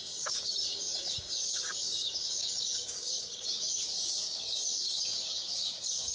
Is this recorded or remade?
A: remade